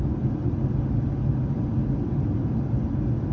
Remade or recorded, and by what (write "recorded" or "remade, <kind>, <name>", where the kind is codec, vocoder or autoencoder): recorded